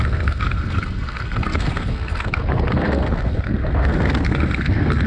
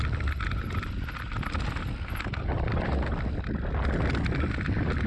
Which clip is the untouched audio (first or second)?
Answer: second